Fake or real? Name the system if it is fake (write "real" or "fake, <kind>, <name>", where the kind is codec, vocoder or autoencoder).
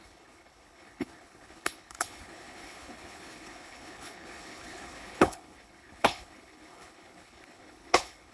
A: fake, codec, HILCodec